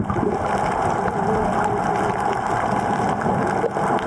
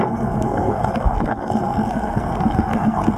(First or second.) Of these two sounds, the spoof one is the second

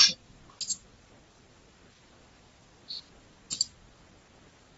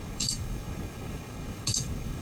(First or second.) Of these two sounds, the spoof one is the second